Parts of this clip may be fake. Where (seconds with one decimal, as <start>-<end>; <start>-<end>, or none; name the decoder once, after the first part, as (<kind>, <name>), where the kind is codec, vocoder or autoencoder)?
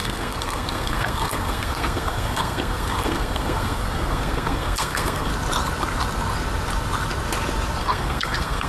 0.0-5.3 (codec, SNAC); 7.8-8.7